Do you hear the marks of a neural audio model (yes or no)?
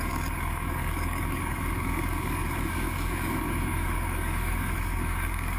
yes